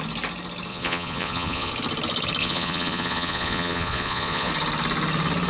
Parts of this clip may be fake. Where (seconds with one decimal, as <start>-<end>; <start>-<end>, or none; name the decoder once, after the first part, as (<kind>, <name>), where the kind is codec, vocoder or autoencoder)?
0.7-1.7 (vocoder, Vocos); 2.4-4.5